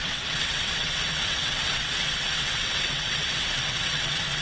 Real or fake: fake